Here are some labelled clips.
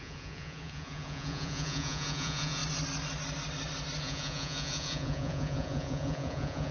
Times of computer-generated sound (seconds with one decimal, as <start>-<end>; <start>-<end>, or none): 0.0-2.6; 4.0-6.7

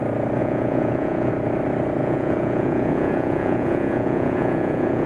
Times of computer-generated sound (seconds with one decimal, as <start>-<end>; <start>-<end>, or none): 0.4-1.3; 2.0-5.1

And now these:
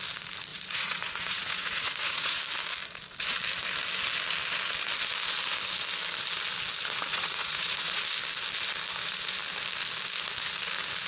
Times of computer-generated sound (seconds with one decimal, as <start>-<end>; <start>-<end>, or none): 0.5-2.4; 7.1-8.0

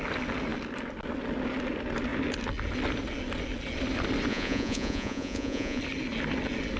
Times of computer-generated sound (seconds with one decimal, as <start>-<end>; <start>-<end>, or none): 4.3-5.8